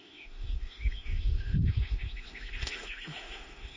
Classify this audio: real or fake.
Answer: fake